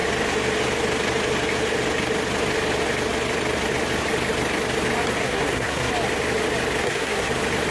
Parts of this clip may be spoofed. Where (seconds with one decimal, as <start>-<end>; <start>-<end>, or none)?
5.2-5.9; 6.8-7.3